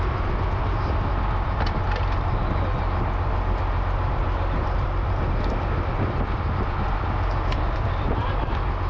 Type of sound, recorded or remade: recorded